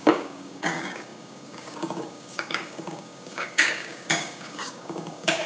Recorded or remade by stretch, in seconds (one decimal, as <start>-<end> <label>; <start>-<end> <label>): 0.0-5.5 remade